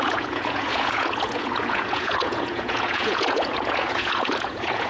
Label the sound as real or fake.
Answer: fake